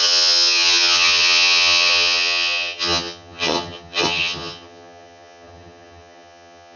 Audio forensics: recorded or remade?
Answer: remade